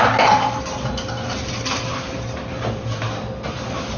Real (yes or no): yes